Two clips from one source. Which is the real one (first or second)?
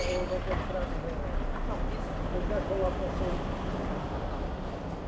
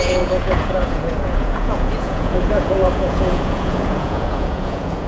first